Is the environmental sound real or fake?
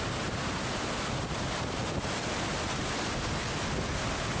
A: real